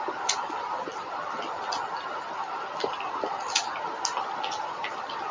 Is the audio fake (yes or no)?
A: no